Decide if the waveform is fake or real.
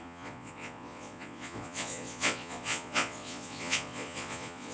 fake